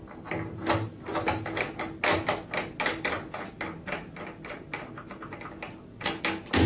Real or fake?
real